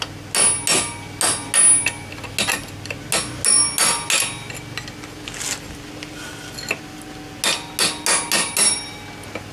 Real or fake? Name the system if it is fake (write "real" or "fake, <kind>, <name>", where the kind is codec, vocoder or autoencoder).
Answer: real